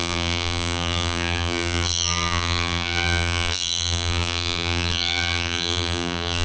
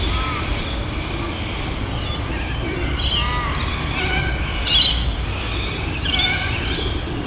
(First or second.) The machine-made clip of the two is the first